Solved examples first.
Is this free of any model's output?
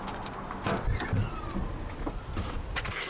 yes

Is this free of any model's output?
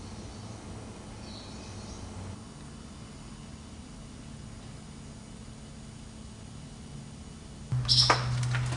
yes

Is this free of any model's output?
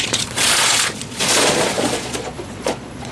no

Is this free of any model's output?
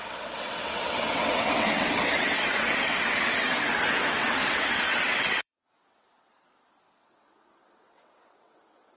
no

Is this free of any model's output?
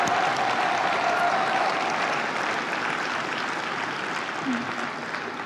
yes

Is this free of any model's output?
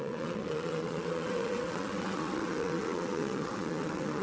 no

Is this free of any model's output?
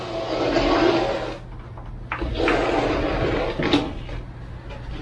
yes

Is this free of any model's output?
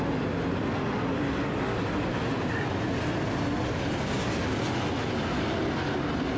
yes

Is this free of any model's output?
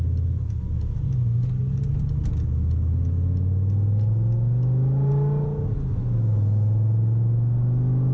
yes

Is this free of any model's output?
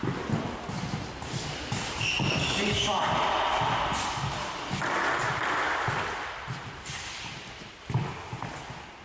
yes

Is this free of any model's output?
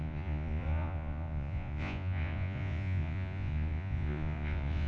no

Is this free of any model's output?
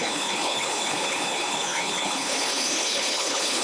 no